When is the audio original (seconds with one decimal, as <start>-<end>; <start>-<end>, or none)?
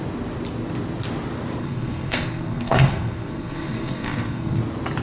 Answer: 0.0-1.6; 4.6-5.0